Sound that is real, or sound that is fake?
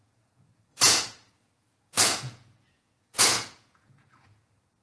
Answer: fake